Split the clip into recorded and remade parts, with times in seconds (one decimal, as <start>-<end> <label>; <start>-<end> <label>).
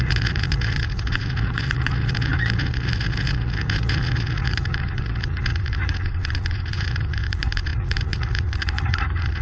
0.0-9.4 remade